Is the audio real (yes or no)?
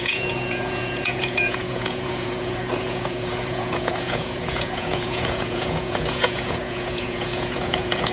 no